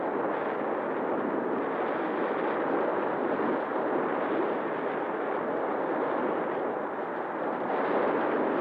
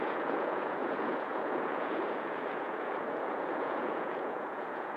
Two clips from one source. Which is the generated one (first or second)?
second